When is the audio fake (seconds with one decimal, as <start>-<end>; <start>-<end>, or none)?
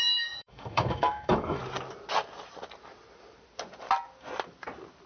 0.0-1.6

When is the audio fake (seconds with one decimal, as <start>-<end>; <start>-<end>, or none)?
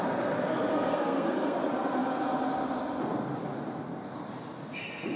0.7-1.6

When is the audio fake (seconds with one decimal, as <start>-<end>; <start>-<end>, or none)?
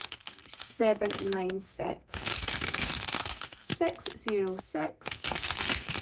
0.0-3.7; 4.6-6.0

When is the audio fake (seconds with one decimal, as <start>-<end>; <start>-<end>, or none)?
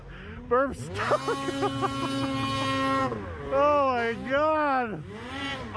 none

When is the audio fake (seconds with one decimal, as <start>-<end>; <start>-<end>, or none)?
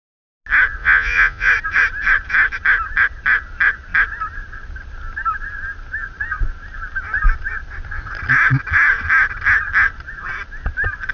0.8-1.5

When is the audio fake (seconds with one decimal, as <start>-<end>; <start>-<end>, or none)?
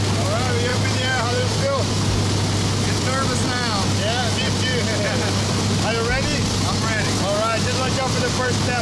0.7-1.9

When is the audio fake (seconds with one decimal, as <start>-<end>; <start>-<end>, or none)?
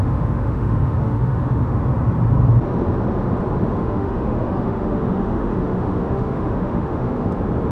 0.0-1.8; 3.7-7.3